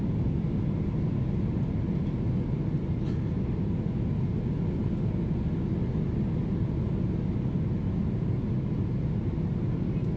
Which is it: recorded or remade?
recorded